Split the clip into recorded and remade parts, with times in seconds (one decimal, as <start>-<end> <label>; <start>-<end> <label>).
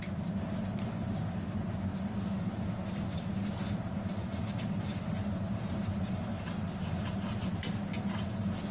0.0-6.3 recorded; 6.3-7.7 remade; 7.7-8.7 recorded